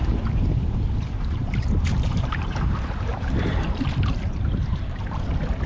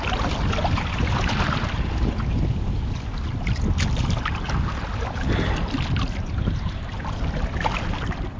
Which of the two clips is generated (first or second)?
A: first